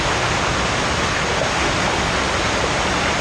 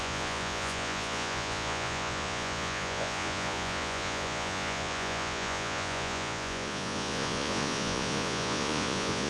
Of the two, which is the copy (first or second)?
second